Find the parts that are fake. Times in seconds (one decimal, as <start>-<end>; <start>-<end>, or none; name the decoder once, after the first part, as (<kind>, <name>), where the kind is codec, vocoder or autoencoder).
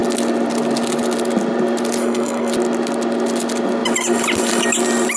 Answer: 2.0-2.5 (codec, SNAC)